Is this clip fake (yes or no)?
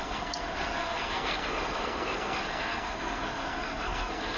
yes